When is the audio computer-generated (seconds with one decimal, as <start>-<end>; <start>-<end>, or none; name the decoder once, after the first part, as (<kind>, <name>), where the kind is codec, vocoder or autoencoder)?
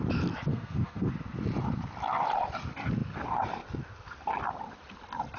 0.5-1.1 (codec, SNAC)